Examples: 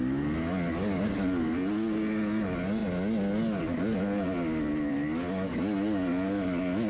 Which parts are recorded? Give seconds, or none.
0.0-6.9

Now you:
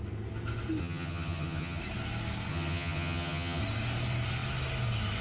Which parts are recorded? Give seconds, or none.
0.0-0.8; 1.8-2.5; 3.6-5.2

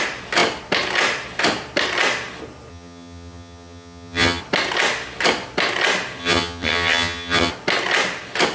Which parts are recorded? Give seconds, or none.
0.0-2.7; 4.4-6.2; 7.5-8.5